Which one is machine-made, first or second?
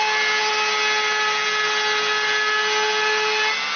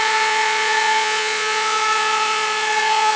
second